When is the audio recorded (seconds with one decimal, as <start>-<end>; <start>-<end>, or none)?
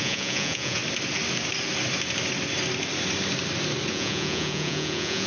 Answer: 0.8-3.9